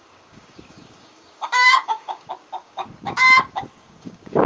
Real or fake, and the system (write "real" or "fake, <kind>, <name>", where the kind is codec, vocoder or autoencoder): fake, codec, DAC